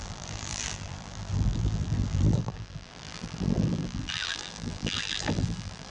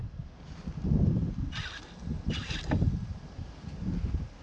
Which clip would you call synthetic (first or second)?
first